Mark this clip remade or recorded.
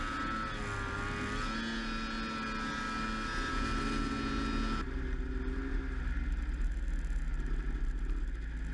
recorded